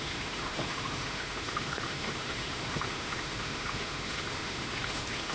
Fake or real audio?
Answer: fake